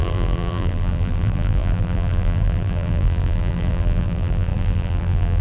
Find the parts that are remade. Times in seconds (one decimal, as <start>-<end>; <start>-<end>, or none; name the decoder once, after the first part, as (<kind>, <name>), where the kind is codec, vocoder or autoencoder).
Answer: 0.0-5.4 (vocoder, BigVGAN v2)